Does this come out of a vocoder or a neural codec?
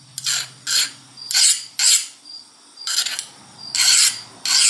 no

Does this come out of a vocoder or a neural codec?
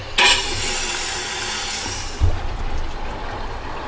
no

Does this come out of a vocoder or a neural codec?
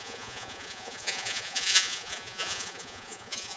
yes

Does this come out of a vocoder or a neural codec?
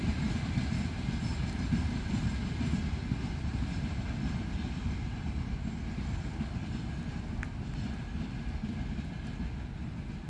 no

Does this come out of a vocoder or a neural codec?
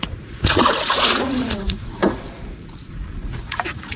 yes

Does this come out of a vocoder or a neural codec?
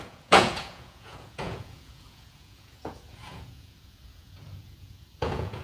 yes